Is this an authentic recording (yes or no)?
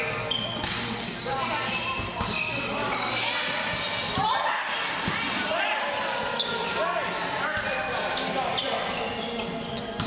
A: yes